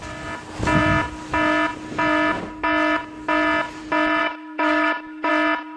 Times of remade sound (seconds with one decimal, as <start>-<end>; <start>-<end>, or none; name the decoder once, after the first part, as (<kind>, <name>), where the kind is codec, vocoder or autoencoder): 4.2-5.3 (autoencoder, DAC-VAE)